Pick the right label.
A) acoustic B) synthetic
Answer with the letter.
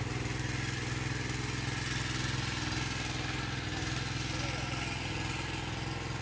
A